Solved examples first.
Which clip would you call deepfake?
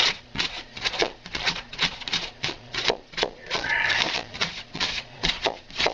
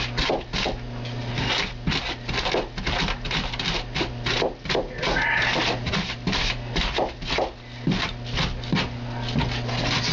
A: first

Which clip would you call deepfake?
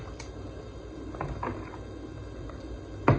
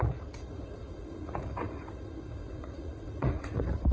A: second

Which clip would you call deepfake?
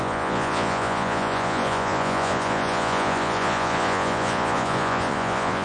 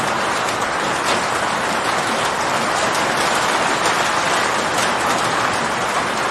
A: first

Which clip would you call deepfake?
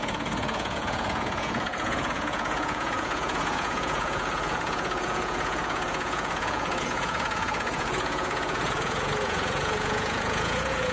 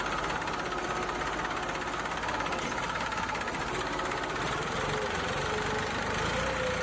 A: first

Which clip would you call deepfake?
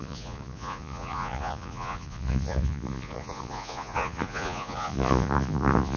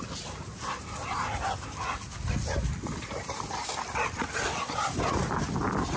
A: first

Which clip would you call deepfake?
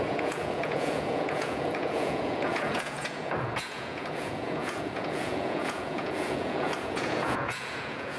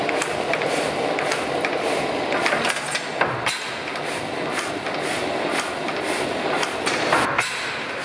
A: first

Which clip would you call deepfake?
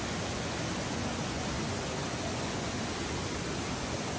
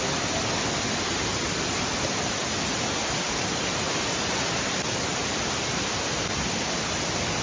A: first